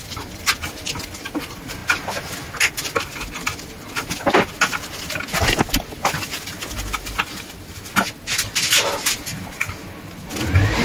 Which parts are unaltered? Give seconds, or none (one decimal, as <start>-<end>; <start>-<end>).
0.0-10.8